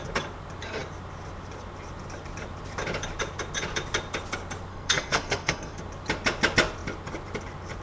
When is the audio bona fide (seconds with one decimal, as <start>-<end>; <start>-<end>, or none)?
0.0-4.7; 5.8-7.8